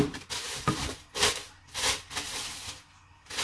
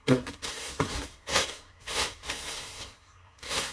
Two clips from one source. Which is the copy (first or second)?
second